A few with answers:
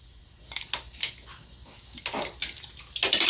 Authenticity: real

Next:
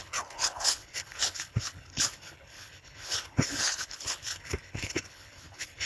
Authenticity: fake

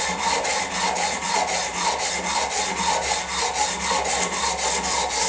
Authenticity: real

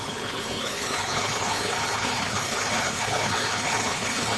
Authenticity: fake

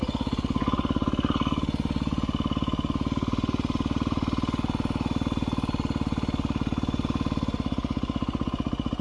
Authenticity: real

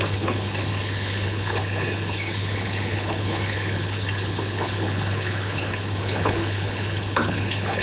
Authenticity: fake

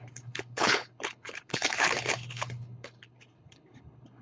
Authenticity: fake